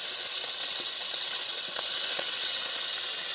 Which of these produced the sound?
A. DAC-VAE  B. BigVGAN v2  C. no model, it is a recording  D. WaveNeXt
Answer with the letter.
D